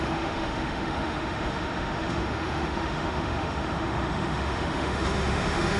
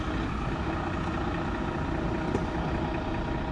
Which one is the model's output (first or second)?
first